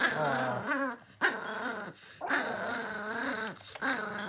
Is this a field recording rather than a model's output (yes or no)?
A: yes